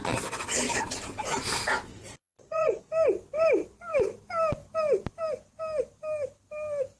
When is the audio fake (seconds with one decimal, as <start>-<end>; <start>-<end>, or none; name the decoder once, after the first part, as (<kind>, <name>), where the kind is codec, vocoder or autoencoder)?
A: 0.0-0.8 (vocoder, Vocos); 1.9-2.8